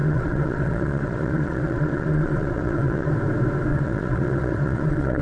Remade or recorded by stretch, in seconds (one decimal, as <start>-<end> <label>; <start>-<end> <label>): 0.0-3.1 remade; 3.1-3.7 recorded; 3.7-5.2 remade